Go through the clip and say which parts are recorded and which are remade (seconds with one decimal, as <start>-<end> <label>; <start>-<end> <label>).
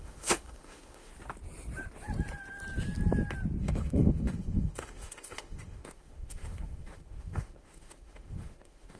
0.0-1.1 remade; 1.1-3.6 recorded; 3.6-9.0 remade